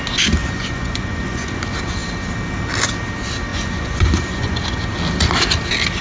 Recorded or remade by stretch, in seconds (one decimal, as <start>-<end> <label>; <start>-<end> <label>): 0.0-0.4 recorded; 0.4-1.6 remade; 1.6-3.5 recorded; 3.5-4.9 remade; 4.9-6.0 recorded

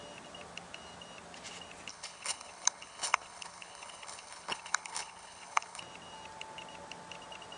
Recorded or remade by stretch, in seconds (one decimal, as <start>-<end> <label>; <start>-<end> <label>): 0.0-1.9 recorded; 1.9-5.8 remade; 5.8-7.6 recorded

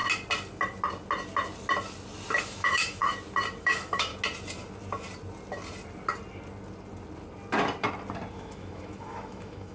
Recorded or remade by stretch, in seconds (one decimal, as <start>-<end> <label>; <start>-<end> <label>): 0.0-2.4 recorded; 2.4-3.0 remade; 3.0-3.6 recorded; 3.6-4.1 remade; 4.1-8.3 recorded; 8.3-9.7 remade

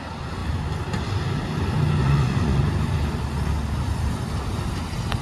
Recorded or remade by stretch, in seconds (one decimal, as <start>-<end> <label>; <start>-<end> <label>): 0.0-2.0 recorded; 2.0-2.6 remade; 2.6-5.2 recorded

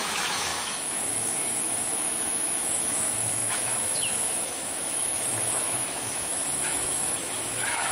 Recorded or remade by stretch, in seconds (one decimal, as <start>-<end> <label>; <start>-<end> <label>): 0.0-7.9 remade

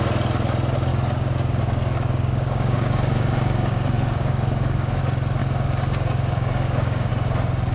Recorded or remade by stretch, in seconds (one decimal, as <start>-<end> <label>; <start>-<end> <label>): 0.0-0.9 recorded; 0.9-5.0 remade; 5.0-5.4 recorded; 5.4-7.1 remade; 7.1-7.7 recorded

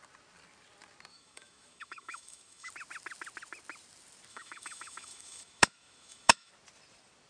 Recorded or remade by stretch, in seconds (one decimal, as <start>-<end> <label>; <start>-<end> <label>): 0.0-1.1 recorded; 1.1-2.7 remade; 2.7-4.3 recorded; 4.3-6.5 remade; 6.5-7.3 recorded